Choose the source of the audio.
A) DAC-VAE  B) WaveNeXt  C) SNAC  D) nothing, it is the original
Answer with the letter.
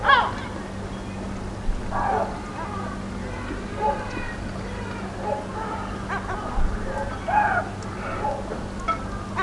D